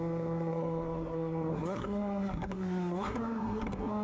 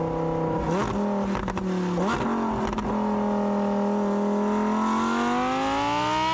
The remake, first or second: first